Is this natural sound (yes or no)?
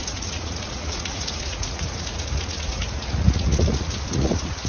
no